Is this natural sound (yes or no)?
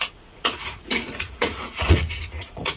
no